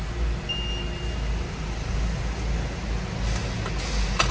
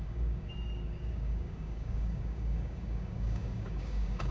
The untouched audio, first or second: first